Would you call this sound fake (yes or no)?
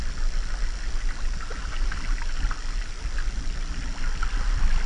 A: no